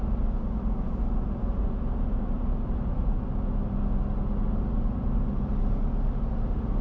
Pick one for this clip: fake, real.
real